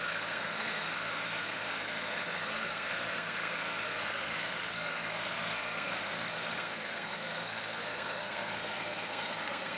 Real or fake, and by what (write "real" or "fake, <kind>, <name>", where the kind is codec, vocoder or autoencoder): fake, codec, SNAC